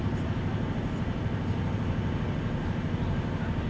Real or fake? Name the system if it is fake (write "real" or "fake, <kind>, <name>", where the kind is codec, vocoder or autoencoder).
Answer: real